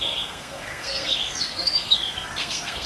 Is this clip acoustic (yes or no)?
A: no